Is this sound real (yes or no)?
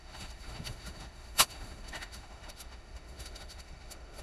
no